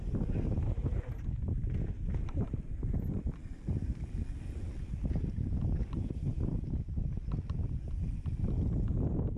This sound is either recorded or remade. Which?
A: recorded